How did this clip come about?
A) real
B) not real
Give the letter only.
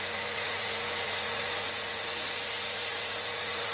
B